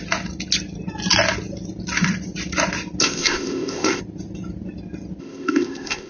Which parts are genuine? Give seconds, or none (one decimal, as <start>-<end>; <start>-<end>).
0.0-3.0; 4.0-5.2